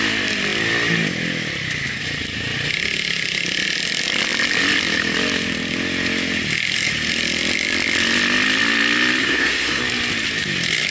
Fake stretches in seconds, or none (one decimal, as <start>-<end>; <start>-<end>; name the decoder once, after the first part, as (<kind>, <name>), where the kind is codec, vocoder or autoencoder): 9.2-9.8 (codec, SNAC)